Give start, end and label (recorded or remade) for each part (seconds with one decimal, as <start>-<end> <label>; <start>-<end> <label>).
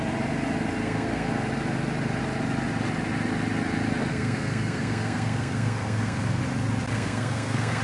0.0-0.8 recorded; 0.8-1.3 remade; 1.3-4.1 recorded; 4.1-6.4 remade; 6.4-6.9 recorded; 6.9-7.8 remade